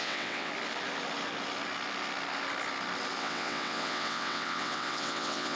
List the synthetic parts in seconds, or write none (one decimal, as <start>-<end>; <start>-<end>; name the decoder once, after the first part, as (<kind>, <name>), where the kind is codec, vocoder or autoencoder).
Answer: 0.0-0.5 (vocoder, WaveNeXt); 3.2-5.6